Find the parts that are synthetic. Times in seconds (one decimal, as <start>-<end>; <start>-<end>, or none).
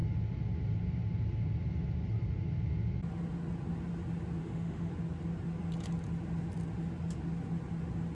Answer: 4.4-4.9